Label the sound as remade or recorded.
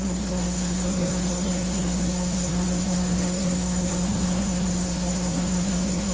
remade